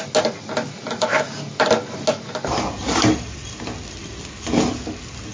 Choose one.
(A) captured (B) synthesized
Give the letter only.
A